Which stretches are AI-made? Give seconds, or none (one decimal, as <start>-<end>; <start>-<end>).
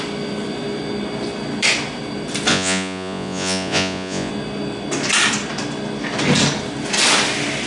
2.5-4.3